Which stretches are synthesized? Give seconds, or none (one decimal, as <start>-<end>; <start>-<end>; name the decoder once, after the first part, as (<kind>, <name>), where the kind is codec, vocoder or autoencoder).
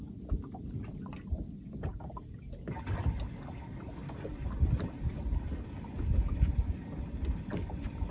none